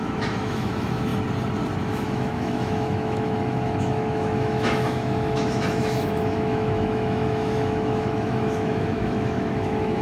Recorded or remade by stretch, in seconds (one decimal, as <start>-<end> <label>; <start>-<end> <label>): 0.0-1.1 remade; 1.1-1.8 recorded; 1.8-10.0 remade